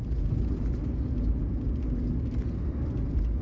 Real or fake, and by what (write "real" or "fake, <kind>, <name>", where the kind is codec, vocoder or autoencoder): real